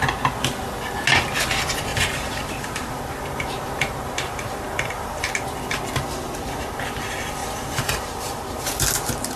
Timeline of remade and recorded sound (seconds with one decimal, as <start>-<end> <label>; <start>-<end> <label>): 0.0-1.9 recorded; 1.9-5.2 remade; 5.2-7.4 recorded; 7.4-8.7 remade; 8.7-9.4 recorded